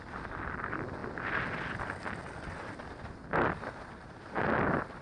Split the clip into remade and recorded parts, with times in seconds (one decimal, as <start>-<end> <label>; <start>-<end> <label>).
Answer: 0.0-5.0 recorded